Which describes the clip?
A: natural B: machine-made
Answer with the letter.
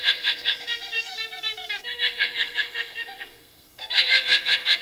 B